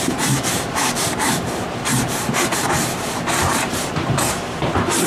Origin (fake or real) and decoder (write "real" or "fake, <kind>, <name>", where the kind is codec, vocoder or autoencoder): fake, vocoder, BigVGAN v2